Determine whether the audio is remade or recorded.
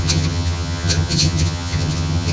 remade